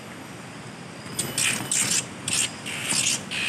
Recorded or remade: recorded